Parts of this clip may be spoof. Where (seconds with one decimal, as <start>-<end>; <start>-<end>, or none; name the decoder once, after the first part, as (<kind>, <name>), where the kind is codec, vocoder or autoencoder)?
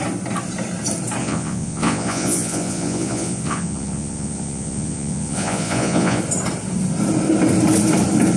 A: 1.2-6.2 (vocoder, Vocos)